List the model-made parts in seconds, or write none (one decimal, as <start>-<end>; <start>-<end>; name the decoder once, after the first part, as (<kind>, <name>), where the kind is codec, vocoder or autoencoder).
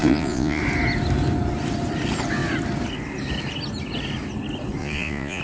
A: 0.0-0.6 (vocoder, Vocos); 4.8-5.4